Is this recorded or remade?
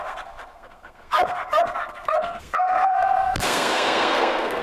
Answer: remade